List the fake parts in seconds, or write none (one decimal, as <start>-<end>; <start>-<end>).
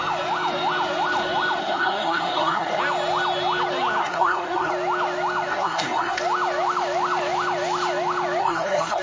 1.6-2.8; 4.0-4.7; 5.5-6.2; 8.4-9.0